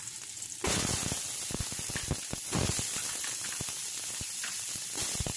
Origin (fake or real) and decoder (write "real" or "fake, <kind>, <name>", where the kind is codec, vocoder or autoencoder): real